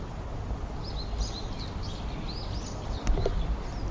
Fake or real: real